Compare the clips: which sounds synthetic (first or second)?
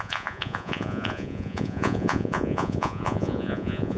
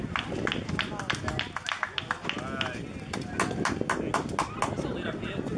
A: first